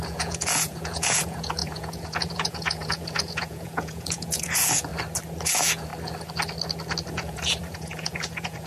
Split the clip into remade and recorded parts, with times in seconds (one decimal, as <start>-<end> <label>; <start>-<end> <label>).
0.0-4.9 remade; 4.9-5.5 recorded; 5.5-5.9 remade; 5.9-7.1 recorded; 7.1-8.7 remade